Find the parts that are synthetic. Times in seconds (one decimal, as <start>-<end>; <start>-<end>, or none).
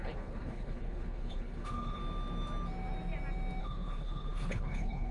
0.0-2.0; 3.6-5.1